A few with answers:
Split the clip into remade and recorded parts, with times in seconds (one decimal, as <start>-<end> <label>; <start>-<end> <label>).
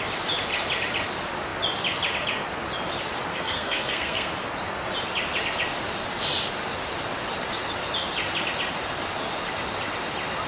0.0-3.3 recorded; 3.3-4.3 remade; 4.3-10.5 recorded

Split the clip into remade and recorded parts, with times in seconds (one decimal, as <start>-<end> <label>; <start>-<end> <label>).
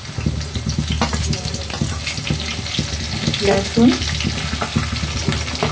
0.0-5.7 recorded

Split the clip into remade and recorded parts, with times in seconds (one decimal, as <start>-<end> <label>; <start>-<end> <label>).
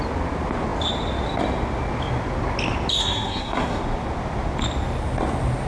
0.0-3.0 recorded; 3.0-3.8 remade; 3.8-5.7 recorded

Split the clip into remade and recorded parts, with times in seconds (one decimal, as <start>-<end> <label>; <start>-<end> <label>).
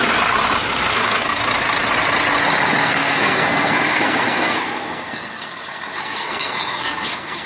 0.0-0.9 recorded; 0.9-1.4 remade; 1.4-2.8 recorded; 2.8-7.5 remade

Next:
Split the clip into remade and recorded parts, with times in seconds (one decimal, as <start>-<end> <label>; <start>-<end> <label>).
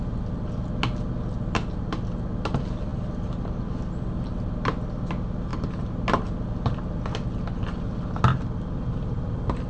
0.0-9.7 recorded